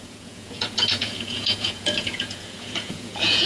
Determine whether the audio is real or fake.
fake